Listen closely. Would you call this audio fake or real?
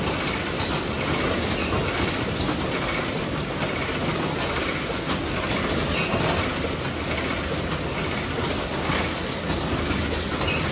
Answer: real